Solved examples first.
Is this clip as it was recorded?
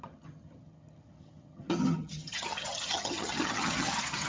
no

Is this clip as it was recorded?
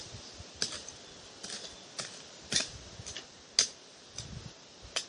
yes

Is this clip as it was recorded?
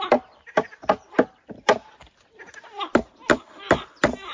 no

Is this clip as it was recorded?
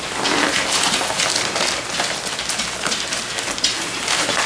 yes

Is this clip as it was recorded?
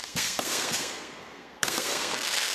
no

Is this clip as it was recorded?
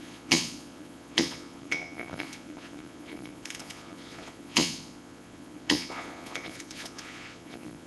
no